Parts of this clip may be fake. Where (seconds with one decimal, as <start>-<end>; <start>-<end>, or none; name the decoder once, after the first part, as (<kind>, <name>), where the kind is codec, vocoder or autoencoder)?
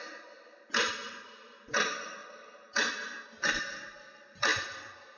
0.0-5.2 (vocoder, BigVGAN v2)